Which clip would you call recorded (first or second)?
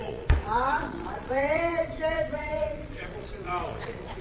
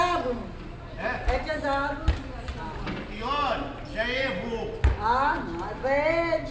second